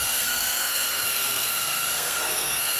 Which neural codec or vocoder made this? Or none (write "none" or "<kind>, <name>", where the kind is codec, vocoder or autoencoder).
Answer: codec, SNAC